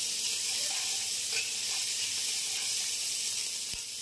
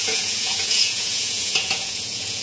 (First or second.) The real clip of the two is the first